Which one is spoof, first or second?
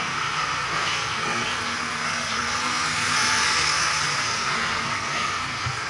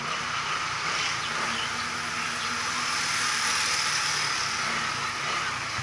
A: first